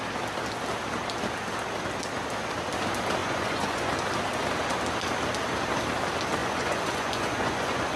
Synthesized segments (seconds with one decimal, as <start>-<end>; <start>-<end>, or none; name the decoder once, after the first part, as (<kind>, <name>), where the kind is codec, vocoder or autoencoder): 3.2-3.9 (vocoder, Vocos); 6.4-8.0